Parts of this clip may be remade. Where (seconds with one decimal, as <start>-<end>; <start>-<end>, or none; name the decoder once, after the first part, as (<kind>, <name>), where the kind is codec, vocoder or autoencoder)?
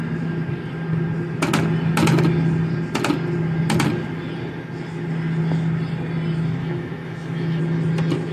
6.6-7.6 (autoencoder, DAC-VAE)